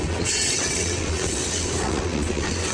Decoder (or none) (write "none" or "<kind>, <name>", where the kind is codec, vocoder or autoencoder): vocoder, WaveNeXt